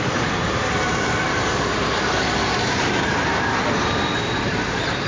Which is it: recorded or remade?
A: remade